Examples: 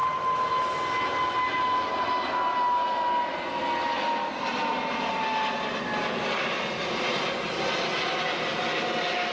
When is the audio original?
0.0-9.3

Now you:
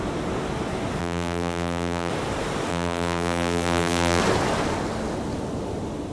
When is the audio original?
0.0-1.0; 2.1-2.7; 4.2-6.1

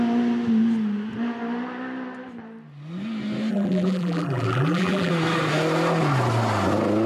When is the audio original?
0.0-3.5; 5.1-7.1

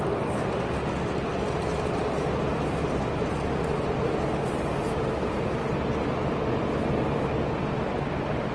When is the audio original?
0.0-8.5

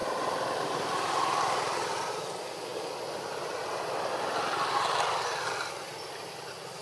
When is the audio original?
2.2-6.8

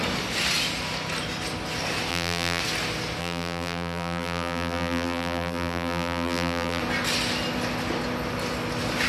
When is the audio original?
0.0-2.1; 2.6-3.2; 6.8-9.1